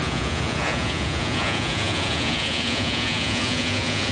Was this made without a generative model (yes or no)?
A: no